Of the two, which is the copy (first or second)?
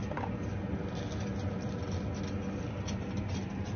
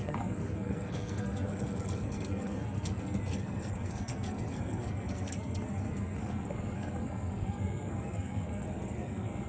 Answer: second